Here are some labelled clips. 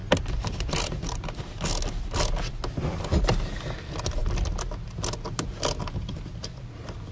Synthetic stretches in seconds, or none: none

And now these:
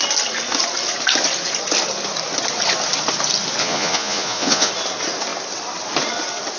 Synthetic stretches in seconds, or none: 3.6-4.7 (vocoder, Vocos)

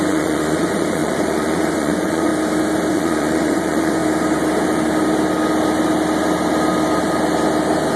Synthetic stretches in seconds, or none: 0.0-2.3 (vocoder, Vocos); 2.9-4.0

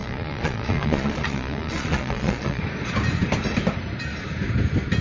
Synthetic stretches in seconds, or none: 0.0-2.6 (vocoder, Vocos)

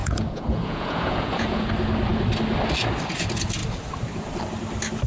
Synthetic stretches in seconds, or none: 0.0-1.7 (vocoder, Vocos)